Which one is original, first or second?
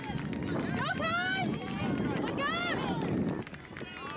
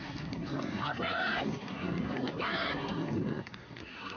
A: first